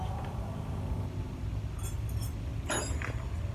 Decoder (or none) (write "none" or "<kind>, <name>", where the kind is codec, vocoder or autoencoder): none